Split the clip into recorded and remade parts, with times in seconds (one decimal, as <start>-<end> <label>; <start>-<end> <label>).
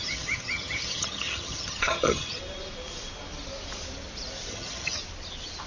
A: 0.0-2.4 remade; 2.4-4.5 recorded; 4.5-5.0 remade; 5.0-5.7 recorded